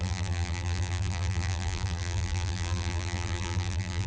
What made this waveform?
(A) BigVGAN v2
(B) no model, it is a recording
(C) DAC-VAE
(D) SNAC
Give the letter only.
A